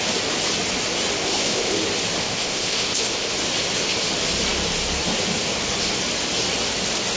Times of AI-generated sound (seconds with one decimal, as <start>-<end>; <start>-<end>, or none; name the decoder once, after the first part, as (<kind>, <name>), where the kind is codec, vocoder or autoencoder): 1.2-1.7 (codec, ZipCodec); 2.2-3.3